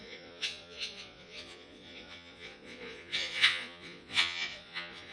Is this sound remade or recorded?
remade